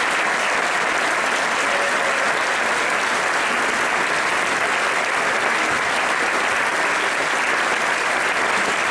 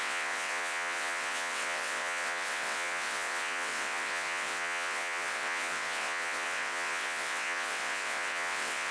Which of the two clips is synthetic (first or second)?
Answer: second